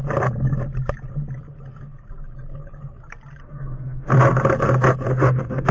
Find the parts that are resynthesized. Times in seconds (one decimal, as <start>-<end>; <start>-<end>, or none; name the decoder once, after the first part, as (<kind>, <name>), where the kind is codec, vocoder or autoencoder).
3.4-4.1 (autoencoder, DAC-VAE); 5.1-5.7